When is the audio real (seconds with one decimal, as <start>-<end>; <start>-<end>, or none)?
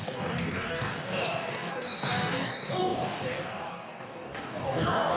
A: none